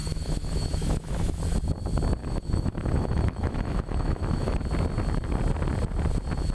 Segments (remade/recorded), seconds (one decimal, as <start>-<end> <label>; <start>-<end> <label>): 0.0-1.4 remade; 1.4-2.2 recorded; 2.2-4.6 remade; 4.6-6.5 recorded